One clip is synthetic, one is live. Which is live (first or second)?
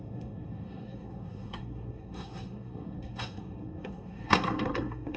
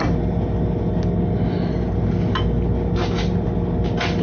second